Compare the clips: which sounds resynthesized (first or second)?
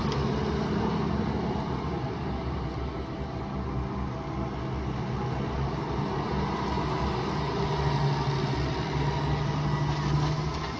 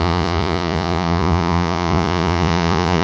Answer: second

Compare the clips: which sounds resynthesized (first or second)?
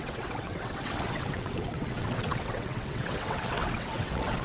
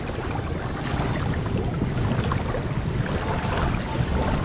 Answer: first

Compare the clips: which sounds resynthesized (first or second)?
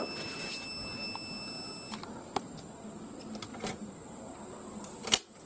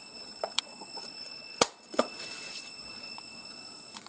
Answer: second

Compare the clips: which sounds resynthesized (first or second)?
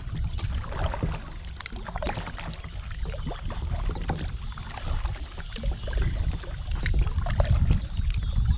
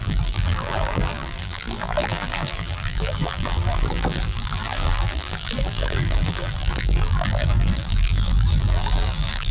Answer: second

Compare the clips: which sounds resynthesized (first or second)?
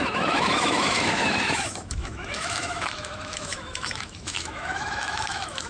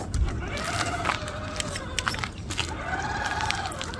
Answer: first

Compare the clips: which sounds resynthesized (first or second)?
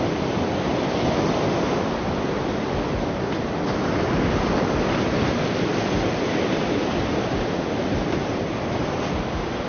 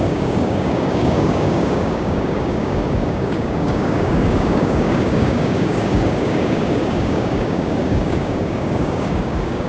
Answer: second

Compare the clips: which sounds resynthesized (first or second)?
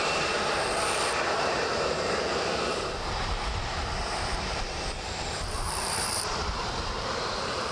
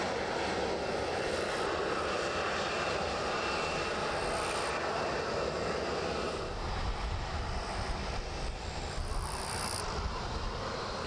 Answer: first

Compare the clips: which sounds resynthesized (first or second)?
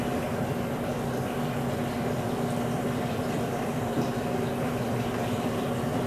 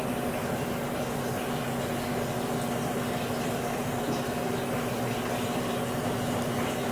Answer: first